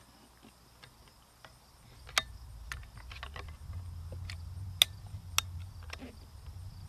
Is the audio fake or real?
real